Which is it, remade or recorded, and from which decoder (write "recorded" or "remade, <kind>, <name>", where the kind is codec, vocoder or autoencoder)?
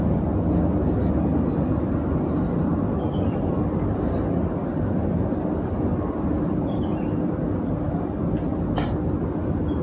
recorded